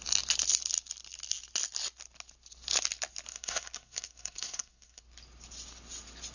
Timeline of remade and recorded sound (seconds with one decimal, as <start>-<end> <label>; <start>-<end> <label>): 0.0-3.3 recorded; 3.3-5.0 remade; 5.0-6.3 recorded